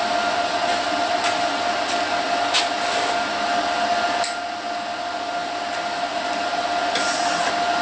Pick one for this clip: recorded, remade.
recorded